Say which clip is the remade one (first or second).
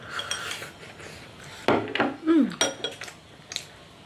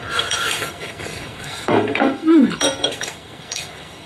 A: second